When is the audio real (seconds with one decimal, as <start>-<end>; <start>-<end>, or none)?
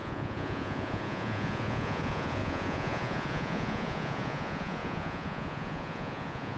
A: none